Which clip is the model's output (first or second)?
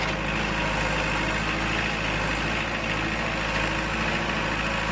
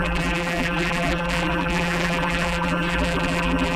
second